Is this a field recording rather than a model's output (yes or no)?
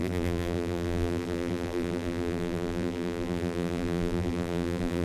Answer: no